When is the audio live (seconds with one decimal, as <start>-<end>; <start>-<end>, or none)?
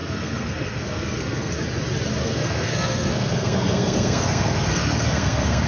1.5-2.2